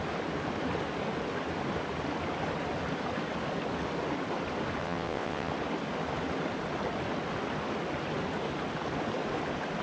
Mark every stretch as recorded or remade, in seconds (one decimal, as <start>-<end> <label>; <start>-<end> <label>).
0.0-4.8 recorded; 4.8-5.5 remade; 5.5-9.8 recorded